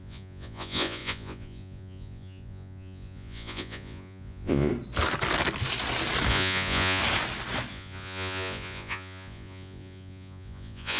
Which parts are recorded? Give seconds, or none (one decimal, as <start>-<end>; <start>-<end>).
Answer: 4.7-6.3; 7.0-7.7